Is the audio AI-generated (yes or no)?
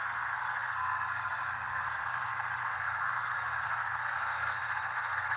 yes